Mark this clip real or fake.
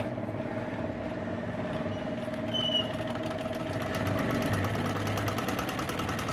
real